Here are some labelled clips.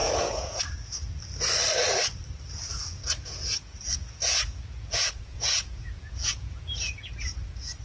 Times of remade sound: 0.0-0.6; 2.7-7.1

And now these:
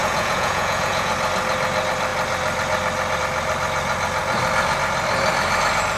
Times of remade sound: 0.0-1.1

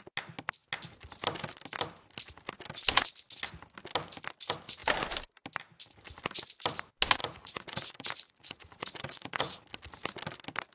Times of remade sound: 7.2-9.6

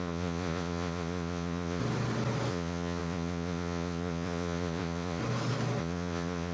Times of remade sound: 0.0-1.8; 2.5-5.2; 5.8-6.5

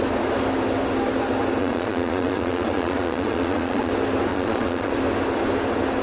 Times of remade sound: 1.6-3.9; 4.3-4.9

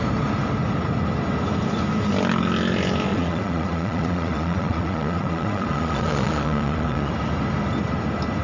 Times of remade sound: 3.1-7.1

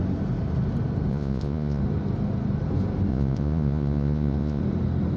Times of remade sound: 1.1-1.8; 3.1-4.6